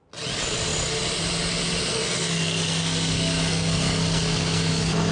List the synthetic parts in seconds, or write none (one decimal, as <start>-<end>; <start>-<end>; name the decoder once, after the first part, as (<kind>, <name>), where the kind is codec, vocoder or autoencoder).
1.9-5.1 (codec, SNAC)